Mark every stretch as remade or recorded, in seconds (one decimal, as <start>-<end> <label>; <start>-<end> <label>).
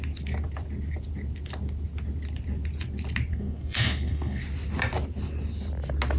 0.0-3.3 recorded; 3.3-4.4 remade; 4.4-6.2 recorded